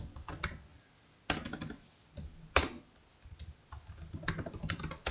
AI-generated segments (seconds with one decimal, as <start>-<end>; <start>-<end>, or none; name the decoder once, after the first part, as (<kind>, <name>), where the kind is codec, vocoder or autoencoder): none